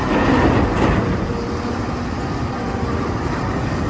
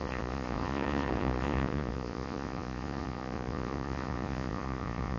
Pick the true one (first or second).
first